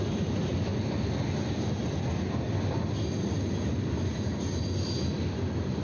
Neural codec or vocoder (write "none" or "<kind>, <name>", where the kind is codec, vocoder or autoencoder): none